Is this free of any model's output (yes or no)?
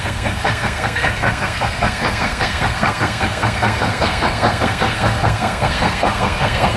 no